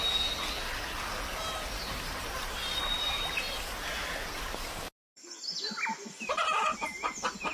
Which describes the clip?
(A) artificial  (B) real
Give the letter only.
B